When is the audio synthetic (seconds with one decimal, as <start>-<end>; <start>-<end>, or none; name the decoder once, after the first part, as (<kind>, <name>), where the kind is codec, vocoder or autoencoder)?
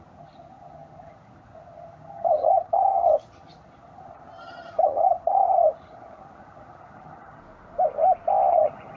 0.0-7.4 (vocoder, HiFi-GAN); 8.5-9.0